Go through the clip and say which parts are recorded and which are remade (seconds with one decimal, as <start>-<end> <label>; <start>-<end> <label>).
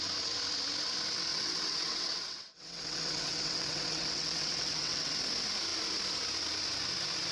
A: 0.0-1.3 recorded; 1.3-5.1 remade; 5.1-7.3 recorded